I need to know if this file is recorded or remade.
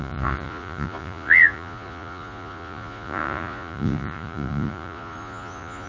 remade